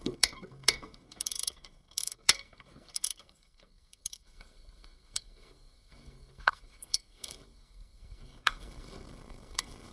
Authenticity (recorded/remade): remade